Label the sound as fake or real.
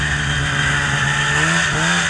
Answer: real